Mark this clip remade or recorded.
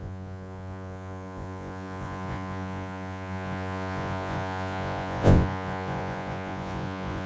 remade